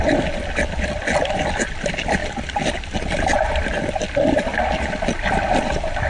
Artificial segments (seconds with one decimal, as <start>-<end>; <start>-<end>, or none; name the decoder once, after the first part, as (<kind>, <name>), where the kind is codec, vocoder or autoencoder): none